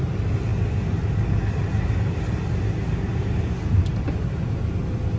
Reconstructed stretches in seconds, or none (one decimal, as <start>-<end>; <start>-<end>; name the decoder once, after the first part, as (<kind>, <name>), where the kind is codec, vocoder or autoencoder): none